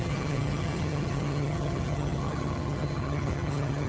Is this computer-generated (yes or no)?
yes